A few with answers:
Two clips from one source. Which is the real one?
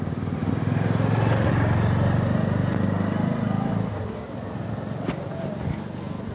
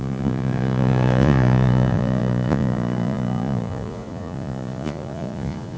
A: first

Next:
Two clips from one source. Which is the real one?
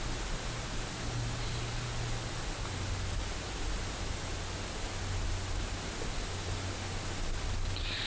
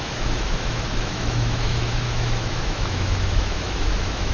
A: first